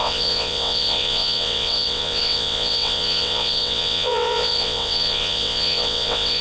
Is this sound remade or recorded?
remade